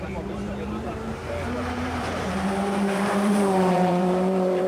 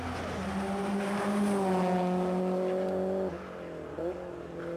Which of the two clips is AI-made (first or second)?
first